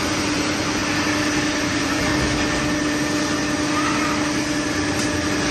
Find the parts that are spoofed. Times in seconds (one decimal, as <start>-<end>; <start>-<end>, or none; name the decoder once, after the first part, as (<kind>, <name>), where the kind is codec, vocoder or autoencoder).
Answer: 0.0-0.8 (vocoder, Vocos); 1.6-2.1